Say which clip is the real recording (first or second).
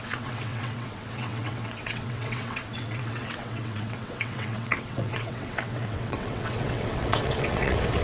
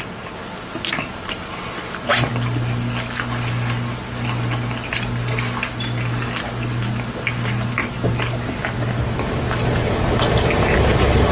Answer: second